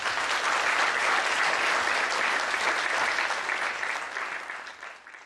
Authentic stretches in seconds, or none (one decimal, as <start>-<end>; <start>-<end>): 0.0-5.3